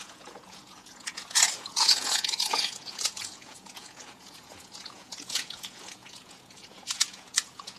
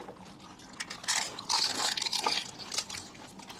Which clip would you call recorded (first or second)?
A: second